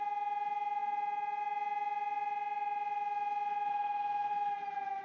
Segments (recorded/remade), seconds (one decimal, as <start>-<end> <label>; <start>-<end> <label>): 0.0-3.7 recorded; 3.7-4.3 remade; 4.3-5.0 recorded